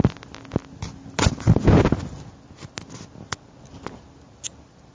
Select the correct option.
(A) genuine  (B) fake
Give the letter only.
A